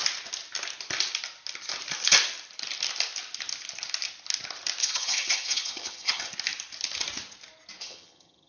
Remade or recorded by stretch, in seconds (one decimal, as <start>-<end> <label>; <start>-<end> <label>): 0.0-4.8 recorded; 4.8-6.3 remade; 6.3-7.8 recorded; 7.8-8.5 remade